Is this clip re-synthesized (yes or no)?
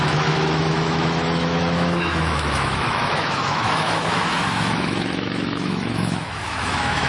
yes